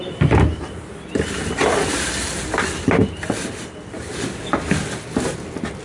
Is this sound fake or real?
real